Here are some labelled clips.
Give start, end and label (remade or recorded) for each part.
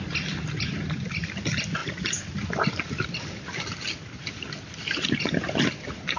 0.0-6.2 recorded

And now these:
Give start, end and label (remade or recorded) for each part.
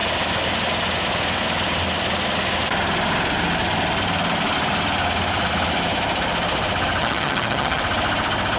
0.0-7.0 recorded; 7.0-7.8 remade; 7.8-8.6 recorded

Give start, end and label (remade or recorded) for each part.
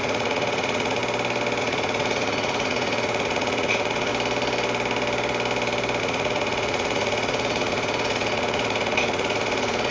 0.0-1.0 remade; 1.0-1.6 recorded; 1.6-4.1 remade; 4.1-6.0 recorded; 6.0-9.9 remade